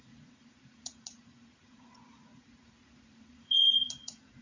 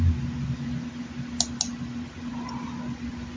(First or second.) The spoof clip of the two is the first